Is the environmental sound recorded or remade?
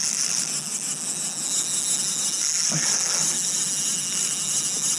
recorded